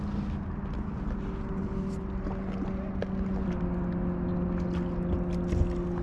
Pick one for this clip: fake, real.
real